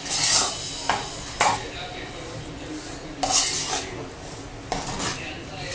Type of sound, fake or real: real